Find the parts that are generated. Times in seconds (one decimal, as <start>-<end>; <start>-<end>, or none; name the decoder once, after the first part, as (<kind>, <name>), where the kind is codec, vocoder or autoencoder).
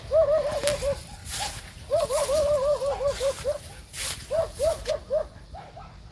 1.2-4.9 (vocoder, BigVGAN v2)